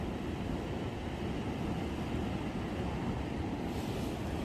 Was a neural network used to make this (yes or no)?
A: no